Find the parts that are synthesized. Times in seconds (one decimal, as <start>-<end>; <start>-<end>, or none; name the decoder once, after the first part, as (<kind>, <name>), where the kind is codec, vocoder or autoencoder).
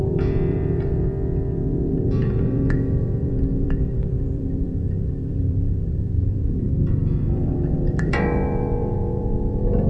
0.0-1.1 (vocoder, BigVGAN v2); 1.9-9.9